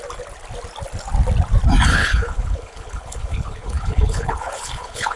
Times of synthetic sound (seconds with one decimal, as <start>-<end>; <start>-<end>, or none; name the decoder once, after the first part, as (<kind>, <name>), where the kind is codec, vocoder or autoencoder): 1.9-5.2 (codec, HILCodec)

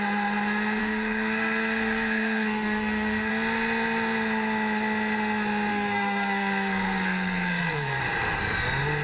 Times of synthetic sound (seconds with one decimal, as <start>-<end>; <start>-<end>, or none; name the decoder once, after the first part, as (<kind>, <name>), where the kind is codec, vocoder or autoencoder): 0.8-3.3 (codec, SNAC); 5.7-8.0

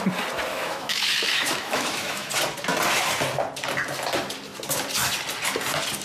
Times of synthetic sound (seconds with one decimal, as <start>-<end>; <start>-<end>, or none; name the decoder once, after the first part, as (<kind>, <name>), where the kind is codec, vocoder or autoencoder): 0.5-2.3 (autoencoder, DAC-VAE)

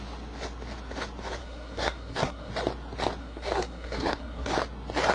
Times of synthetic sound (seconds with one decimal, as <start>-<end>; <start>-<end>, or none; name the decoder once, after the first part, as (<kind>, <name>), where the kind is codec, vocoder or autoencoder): 1.4-2.5 (codec, SNAC); 3.2-4.5

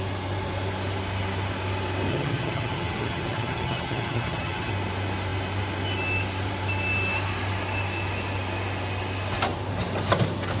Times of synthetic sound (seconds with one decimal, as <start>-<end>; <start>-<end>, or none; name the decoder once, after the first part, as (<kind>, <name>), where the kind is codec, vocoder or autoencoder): 2.1-4.7 (vocoder, HiFi-GAN)

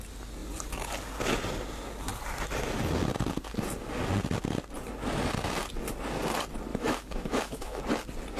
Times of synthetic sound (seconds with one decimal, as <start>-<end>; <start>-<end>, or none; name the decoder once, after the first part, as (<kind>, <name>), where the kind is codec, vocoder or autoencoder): 6.7-7.8 (autoencoder, DAC-VAE)

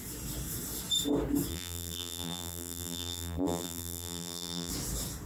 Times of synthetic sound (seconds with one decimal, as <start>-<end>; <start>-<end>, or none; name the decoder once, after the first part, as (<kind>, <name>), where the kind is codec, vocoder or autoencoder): 1.5-4.7 (vocoder, BigVGAN v2)

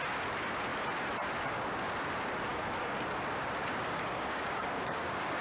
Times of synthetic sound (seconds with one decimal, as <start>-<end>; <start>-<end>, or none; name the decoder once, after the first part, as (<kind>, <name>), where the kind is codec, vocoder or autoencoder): 2.5-3.0 (codec, DAC); 3.6-5.4